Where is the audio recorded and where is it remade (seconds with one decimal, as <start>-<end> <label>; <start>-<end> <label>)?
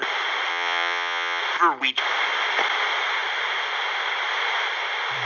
0.0-0.5 recorded; 0.5-1.4 remade; 1.4-5.2 recorded